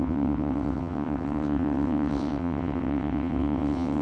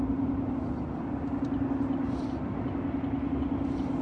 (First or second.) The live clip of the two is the second